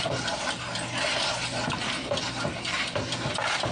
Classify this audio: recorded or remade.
recorded